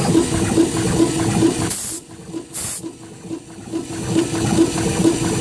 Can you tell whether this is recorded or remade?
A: recorded